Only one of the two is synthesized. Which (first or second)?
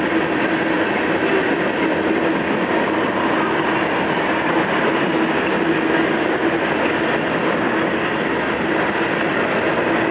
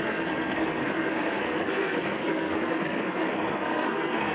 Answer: second